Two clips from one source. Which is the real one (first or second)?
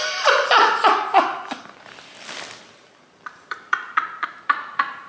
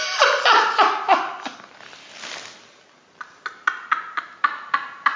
second